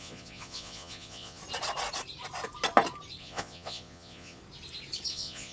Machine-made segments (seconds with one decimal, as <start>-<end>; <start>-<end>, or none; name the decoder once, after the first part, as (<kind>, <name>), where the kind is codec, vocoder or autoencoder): 0.0-1.4 (vocoder, Vocos); 3.2-4.4; 5.1-5.5